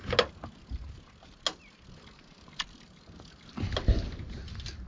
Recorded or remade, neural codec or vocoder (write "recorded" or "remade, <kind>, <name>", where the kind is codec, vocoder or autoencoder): recorded